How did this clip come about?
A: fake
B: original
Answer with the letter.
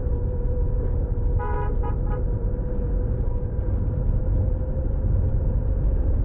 A